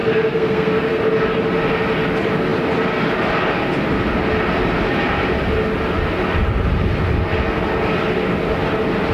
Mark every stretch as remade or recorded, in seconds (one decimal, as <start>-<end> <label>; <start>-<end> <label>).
0.0-1.0 remade; 1.0-9.1 recorded